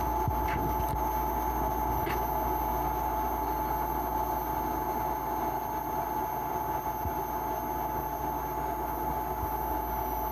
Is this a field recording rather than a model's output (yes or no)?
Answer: yes